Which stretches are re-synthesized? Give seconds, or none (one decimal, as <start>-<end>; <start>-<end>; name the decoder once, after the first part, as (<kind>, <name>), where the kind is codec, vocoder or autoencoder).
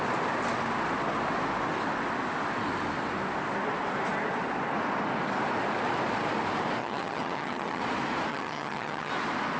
6.8-7.8 (vocoder, HiFi-GAN); 8.3-9.1